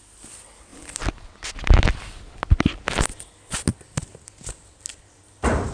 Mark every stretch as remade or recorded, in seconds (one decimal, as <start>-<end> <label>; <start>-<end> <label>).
0.0-5.7 recorded